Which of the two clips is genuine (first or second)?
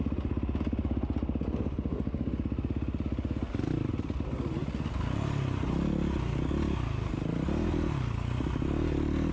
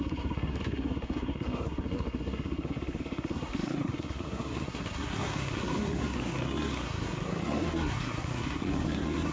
first